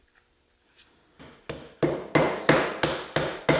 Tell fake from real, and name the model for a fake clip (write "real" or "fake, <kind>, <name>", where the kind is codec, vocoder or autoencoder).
real